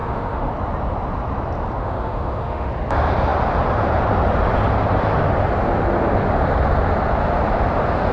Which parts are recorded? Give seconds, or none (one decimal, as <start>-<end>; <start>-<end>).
0.5-1.8; 2.7-8.1